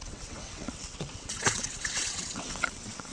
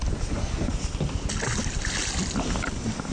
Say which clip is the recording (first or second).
second